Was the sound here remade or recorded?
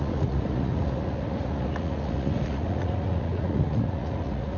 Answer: remade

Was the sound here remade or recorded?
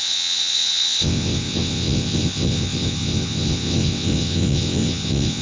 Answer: remade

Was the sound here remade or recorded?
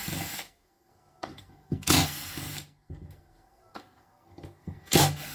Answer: remade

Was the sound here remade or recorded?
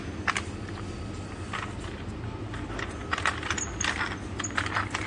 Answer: recorded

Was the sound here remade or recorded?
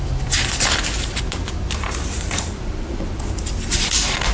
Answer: remade